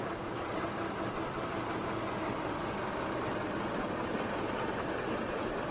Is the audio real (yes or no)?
no